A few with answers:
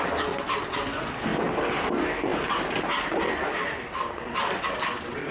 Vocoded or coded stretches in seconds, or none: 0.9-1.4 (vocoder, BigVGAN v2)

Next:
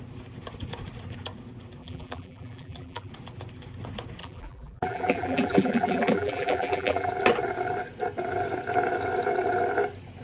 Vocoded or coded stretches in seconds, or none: 1.8-3.1 (vocoder, BigVGAN v2); 4.2-7.1